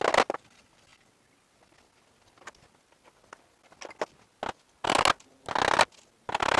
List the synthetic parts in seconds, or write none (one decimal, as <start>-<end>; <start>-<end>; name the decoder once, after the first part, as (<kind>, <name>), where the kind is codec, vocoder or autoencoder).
none